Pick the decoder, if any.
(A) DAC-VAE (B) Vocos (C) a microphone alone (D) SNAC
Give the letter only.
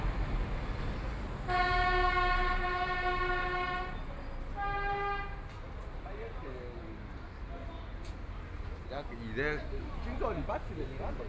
C